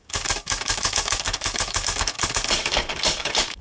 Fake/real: fake